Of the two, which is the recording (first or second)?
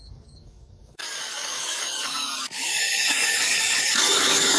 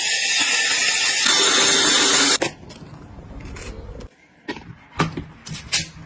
second